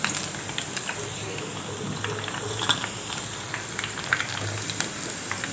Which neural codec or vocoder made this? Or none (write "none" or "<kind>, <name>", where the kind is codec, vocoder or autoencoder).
none